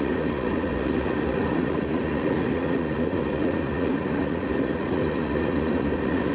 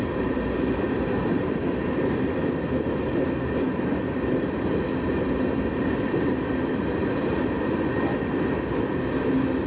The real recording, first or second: second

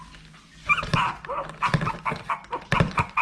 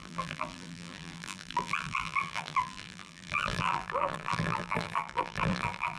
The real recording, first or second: first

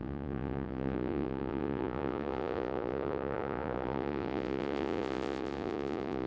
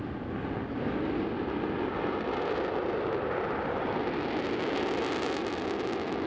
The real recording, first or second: second